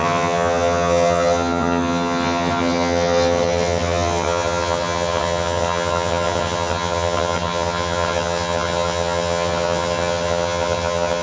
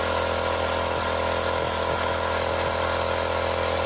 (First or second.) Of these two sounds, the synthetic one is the first